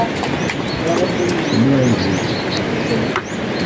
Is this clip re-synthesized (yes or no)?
no